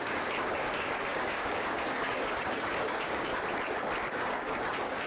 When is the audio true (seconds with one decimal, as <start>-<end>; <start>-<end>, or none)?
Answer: 3.3-4.1